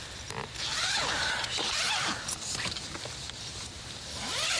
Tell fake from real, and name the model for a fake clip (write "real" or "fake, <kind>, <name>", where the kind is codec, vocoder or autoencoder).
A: real